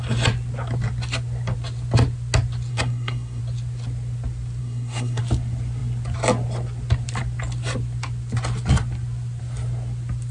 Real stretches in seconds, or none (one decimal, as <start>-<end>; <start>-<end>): 0.0-2.7; 3.4-4.6; 5.2-10.3